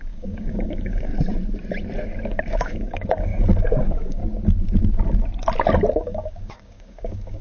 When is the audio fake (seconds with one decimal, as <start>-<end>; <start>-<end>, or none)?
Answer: 0.0-1.1; 2.5-3.3; 3.8-4.2; 5.9-7.4